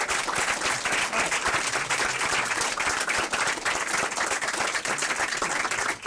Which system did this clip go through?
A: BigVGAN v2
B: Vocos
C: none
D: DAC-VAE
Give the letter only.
C